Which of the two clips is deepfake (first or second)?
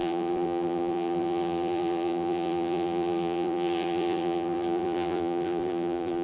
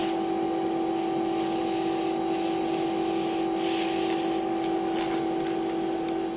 first